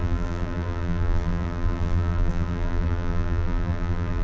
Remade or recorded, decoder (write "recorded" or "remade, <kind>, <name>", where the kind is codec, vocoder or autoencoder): remade, vocoder, BigVGAN v2